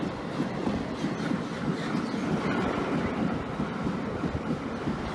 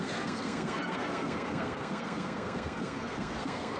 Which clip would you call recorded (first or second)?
first